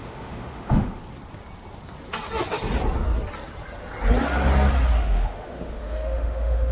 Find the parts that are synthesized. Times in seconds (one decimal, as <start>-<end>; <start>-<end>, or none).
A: 0.0-1.0; 5.0-6.7